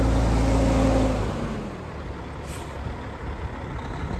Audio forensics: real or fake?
real